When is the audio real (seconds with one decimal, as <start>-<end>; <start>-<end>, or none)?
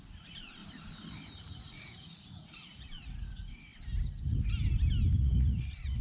0.6-1.5; 3.7-5.2